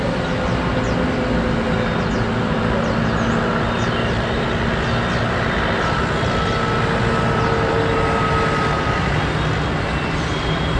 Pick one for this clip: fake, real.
real